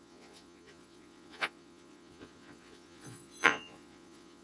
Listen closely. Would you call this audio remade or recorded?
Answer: remade